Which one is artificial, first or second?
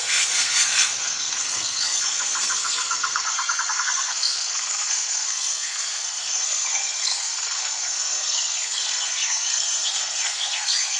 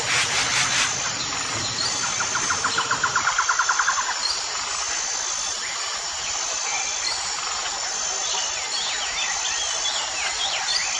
first